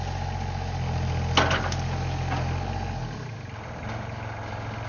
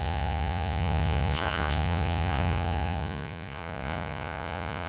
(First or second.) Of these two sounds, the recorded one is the first